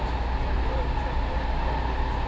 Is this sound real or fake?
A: real